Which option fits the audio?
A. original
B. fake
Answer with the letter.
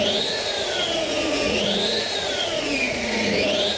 B